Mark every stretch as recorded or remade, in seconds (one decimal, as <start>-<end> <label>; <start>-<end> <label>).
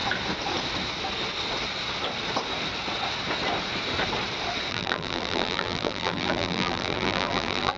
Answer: 0.0-4.7 recorded; 4.7-7.8 remade